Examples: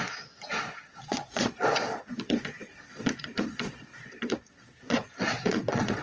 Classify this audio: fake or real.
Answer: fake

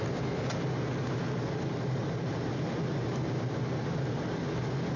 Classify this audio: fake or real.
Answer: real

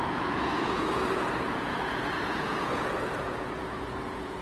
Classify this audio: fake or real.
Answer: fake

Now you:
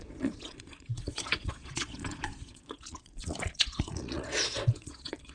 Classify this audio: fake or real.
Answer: fake